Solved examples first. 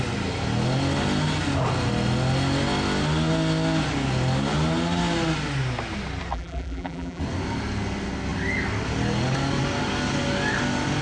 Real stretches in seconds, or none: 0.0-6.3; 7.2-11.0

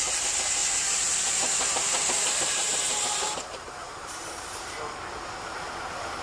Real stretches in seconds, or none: 0.0-0.6; 4.3-6.2

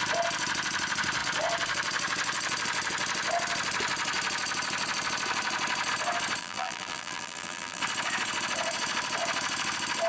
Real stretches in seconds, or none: 0.0-6.4; 7.8-10.1

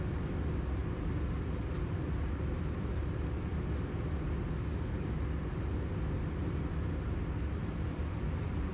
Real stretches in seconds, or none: 0.8-1.6; 3.5-7.9

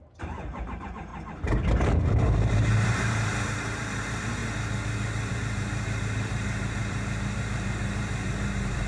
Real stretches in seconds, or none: 1.1-1.8; 4.4-5.3